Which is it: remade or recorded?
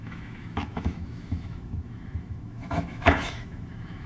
remade